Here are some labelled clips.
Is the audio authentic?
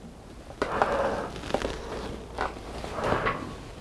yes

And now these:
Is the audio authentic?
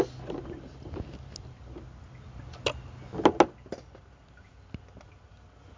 yes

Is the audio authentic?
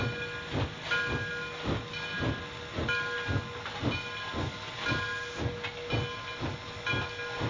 yes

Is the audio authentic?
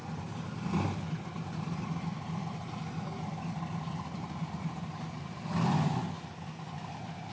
yes